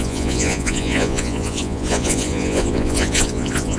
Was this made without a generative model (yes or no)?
no